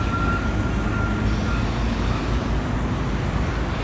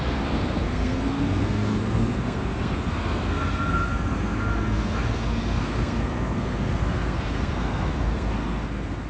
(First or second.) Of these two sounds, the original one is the first